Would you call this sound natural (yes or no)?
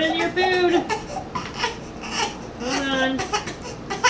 yes